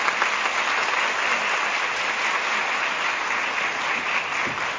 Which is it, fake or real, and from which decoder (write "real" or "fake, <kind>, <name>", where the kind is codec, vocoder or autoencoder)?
real